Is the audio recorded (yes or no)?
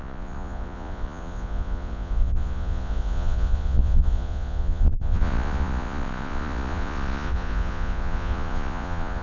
no